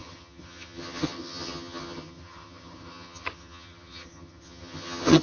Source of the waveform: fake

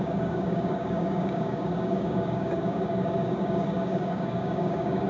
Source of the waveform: fake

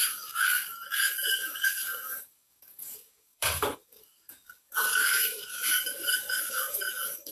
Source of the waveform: fake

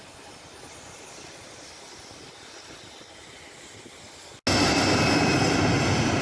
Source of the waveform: real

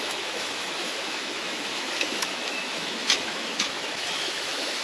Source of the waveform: fake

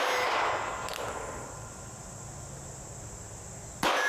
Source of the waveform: real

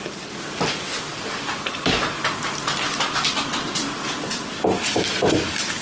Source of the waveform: real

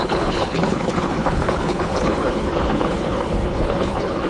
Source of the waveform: fake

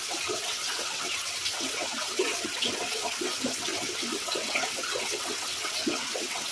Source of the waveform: fake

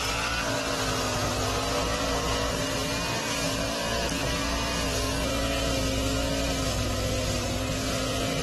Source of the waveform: real